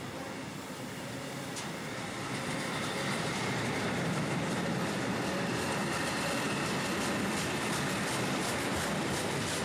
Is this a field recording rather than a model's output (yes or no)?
yes